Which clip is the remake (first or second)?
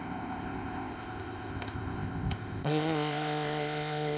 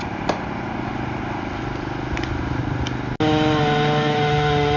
first